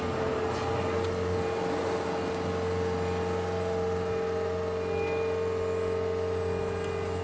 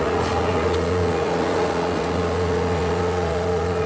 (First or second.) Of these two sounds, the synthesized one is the second